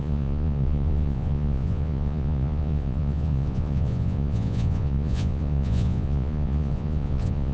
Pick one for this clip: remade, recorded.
remade